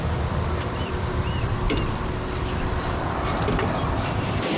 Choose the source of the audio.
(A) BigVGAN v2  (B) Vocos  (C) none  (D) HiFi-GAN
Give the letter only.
A